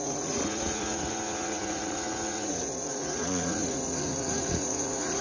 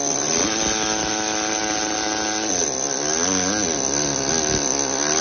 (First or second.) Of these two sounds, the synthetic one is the first